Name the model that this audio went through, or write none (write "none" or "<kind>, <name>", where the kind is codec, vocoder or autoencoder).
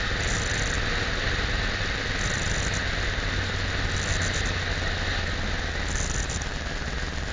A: none